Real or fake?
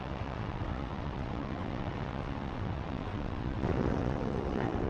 fake